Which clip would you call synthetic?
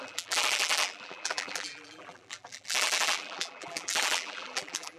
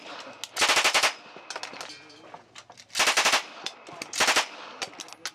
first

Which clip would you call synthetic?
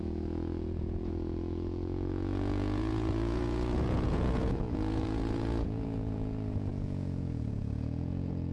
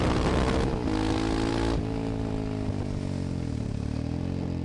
first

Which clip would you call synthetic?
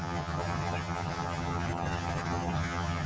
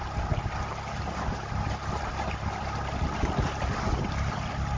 first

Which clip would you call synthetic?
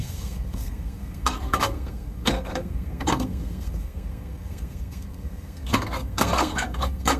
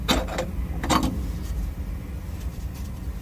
first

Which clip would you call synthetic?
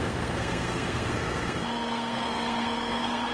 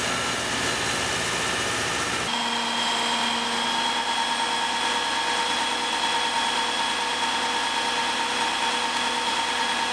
first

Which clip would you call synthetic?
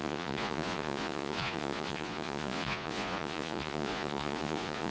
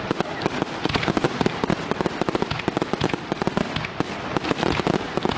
first